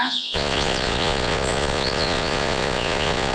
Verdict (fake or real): fake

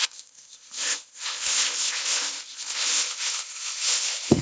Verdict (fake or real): fake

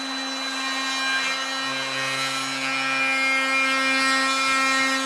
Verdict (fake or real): real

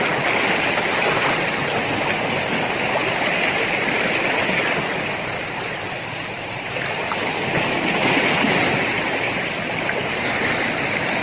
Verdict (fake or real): real